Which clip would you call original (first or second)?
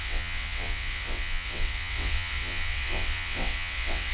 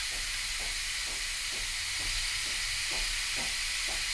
second